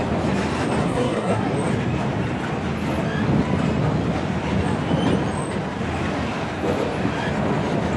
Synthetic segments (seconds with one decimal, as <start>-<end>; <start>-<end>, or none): 0.8-1.5